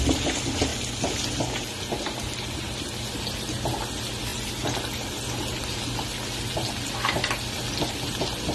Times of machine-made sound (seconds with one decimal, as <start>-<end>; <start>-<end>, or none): none